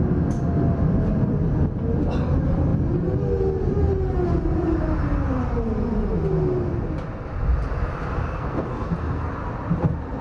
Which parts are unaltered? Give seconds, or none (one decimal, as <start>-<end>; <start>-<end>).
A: 0.0-8.3; 9.3-10.2

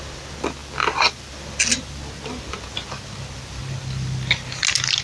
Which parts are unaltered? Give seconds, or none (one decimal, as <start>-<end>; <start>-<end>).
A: 0.0-5.0

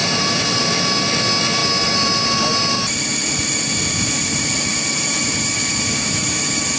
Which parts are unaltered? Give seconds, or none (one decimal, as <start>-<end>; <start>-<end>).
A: 0.7-4.3; 5.5-6.8

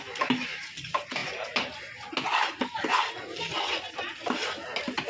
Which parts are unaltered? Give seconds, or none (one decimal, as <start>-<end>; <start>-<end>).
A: 0.0-5.1

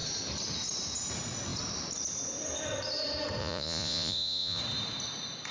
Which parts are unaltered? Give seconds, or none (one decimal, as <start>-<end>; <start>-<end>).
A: 0.0-3.4; 4.6-5.5

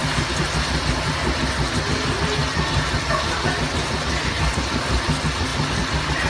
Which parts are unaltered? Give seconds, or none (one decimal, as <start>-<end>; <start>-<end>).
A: 0.0-6.3

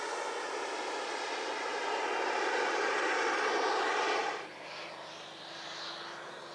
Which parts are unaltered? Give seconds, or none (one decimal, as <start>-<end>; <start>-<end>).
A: 0.0-1.7; 3.0-4.2; 5.7-6.5